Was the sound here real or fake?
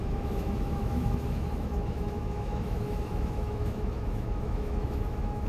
fake